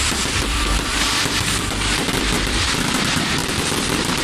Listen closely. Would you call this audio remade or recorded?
remade